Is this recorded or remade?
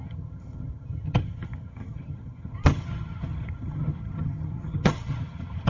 remade